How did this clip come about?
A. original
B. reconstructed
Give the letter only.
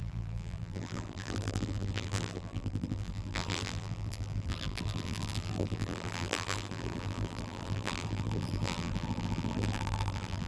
B